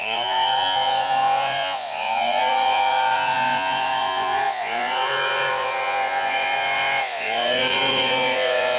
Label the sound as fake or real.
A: fake